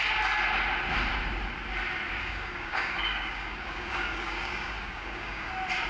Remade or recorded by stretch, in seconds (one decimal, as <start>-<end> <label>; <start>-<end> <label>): 0.0-2.2 recorded; 2.2-5.5 remade; 5.5-5.9 recorded